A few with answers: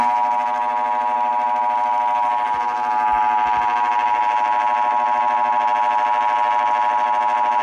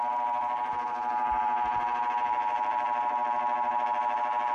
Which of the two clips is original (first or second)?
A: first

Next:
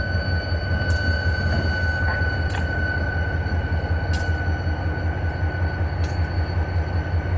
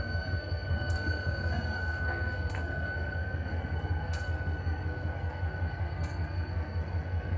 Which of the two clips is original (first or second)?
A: first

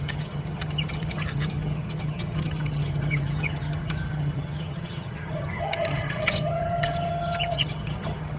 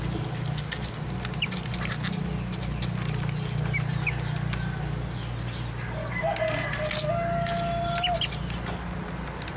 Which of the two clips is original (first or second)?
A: second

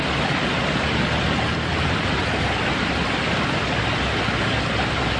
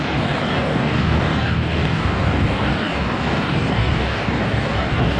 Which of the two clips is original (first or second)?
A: first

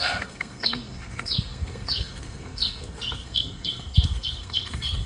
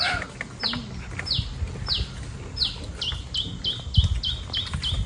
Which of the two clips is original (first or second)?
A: second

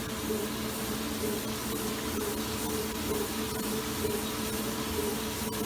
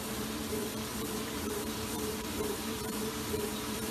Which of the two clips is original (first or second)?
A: first